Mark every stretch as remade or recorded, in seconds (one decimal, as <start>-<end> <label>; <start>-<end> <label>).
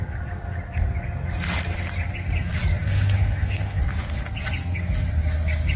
0.0-2.8 recorded; 2.8-3.8 remade; 3.8-5.8 recorded